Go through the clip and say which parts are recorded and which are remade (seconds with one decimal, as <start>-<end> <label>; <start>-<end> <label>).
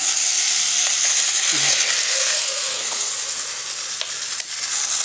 0.0-2.0 recorded; 2.0-3.1 remade; 3.1-5.0 recorded